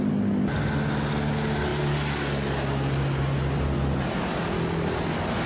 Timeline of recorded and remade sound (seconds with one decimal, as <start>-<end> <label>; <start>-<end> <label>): 0.0-5.5 recorded